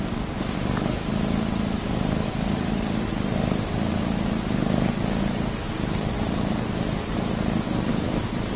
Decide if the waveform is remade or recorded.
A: recorded